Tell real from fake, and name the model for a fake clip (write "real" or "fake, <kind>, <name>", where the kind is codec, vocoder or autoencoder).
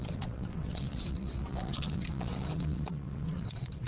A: fake, vocoder, WaveNeXt